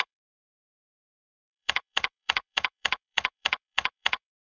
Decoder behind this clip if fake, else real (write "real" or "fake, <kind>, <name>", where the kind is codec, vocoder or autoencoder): fake, codec, DAC